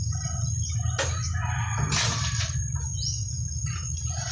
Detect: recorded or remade recorded